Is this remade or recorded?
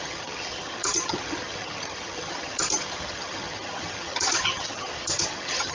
remade